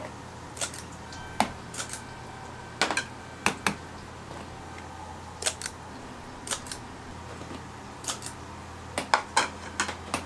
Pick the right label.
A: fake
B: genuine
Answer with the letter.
B